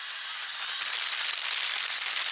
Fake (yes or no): no